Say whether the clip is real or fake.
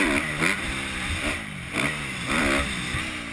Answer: real